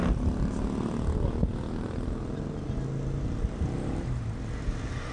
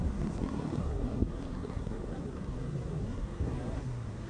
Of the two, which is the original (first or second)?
first